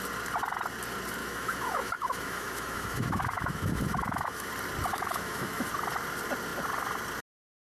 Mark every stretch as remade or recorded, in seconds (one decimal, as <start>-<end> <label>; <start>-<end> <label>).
0.0-1.2 recorded; 1.2-4.5 remade; 4.5-4.9 recorded; 4.9-5.7 remade; 5.7-7.7 recorded